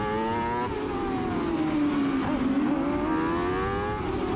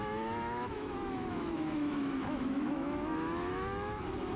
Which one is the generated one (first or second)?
second